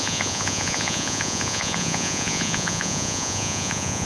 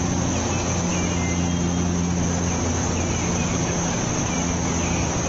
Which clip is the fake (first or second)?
first